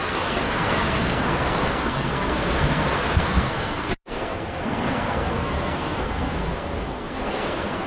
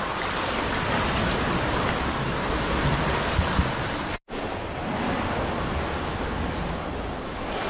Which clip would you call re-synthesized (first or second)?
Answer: first